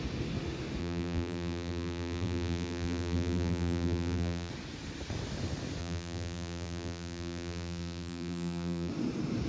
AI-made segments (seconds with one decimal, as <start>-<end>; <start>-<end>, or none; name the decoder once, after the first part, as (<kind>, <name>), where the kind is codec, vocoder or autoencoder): 0.8-4.5 (vocoder, BigVGAN v2); 5.8-8.9